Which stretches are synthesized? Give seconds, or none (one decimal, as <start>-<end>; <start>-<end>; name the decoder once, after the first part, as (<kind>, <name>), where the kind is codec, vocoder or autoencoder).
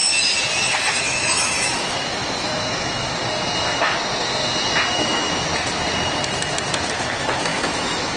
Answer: 1.0-3.2 (autoencoder, DAC-VAE); 4.9-5.5; 6.9-8.2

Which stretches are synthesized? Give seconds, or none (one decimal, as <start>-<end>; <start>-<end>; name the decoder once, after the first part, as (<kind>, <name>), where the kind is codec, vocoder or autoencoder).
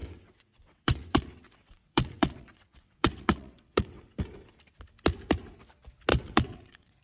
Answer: 0.0-4.2 (vocoder, WaveNeXt); 6.1-7.0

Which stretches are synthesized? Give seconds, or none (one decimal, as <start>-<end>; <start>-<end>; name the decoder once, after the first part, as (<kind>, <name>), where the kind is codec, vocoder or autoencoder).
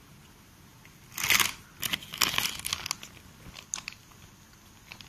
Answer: none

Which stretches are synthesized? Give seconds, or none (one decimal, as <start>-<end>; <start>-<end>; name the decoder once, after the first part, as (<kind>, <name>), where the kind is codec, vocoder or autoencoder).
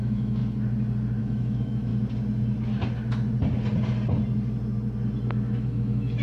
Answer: 0.0-0.4 (autoencoder, DAC-VAE); 1.2-1.9; 5.6-6.2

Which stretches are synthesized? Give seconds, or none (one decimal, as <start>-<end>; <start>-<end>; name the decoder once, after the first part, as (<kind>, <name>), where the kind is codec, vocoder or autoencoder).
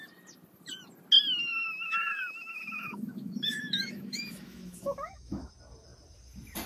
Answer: 1.5-5.5 (autoencoder, DAC-VAE)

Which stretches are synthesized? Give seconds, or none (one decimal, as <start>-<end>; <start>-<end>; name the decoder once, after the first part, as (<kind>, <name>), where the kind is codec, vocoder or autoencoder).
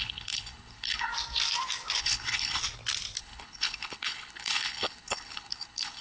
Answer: 0.0-1.1 (codec, HILCodec); 2.0-2.6; 3.2-6.0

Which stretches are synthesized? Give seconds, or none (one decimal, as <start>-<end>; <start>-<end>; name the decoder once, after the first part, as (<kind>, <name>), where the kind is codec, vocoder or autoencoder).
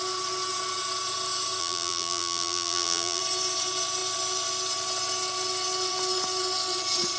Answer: 1.6-3.2 (vocoder, BigVGAN v2)